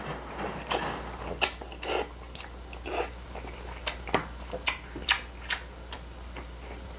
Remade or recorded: recorded